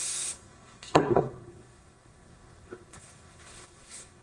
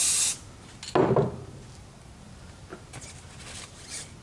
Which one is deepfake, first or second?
first